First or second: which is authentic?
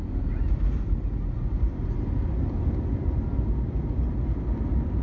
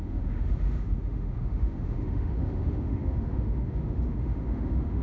first